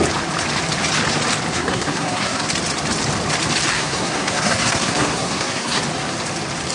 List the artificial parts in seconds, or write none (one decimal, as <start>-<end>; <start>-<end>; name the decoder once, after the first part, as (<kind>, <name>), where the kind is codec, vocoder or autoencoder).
1.5-2.5 (codec, SNAC); 3.7-5.8